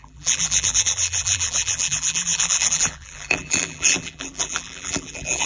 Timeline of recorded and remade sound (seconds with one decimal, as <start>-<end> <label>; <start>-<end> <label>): 0.0-5.5 remade